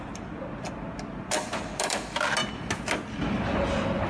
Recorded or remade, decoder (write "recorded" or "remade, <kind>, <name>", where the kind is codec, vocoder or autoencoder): recorded